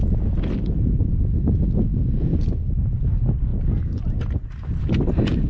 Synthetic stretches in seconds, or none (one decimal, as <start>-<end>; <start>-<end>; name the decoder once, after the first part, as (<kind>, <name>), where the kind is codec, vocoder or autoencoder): none

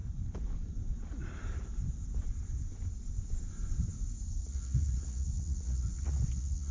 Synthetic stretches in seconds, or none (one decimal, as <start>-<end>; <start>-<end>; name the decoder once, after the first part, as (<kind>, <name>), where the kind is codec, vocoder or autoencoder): 4.4-6.7 (vocoder, Vocos)

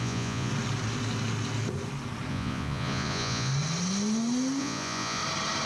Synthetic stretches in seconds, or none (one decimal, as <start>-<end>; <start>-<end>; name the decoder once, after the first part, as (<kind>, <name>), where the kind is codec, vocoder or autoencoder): 0.0-0.5 (vocoder, Vocos); 2.3-3.5; 4.6-5.2

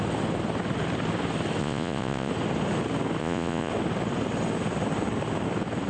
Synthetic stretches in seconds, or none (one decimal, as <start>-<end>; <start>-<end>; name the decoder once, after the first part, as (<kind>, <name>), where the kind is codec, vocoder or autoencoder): 1.6-2.3 (vocoder, Vocos); 3.2-3.7